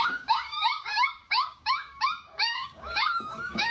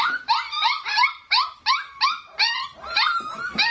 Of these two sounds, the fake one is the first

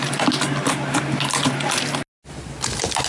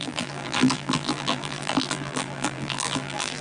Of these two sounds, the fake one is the second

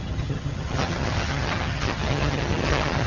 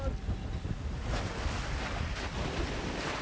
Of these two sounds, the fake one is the first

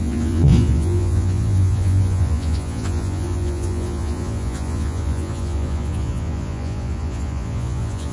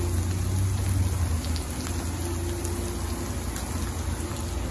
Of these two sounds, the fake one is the first